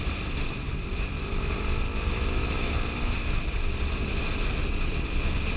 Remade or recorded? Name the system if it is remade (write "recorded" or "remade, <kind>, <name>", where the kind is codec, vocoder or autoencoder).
recorded